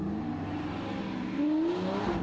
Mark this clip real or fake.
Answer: real